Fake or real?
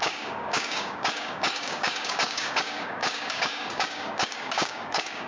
fake